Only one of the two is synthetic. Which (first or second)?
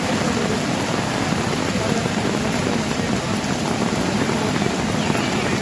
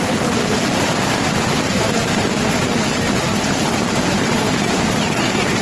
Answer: second